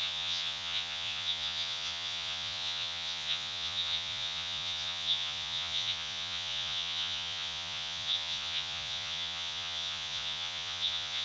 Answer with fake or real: fake